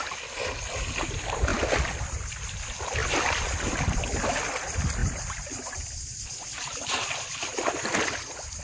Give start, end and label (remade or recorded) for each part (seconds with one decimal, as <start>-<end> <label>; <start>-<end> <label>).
0.0-8.6 recorded